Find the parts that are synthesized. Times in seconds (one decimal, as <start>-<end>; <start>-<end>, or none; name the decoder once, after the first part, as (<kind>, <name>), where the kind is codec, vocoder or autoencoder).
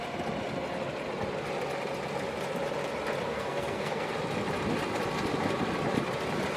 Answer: 3.3-4.1 (codec, SNAC)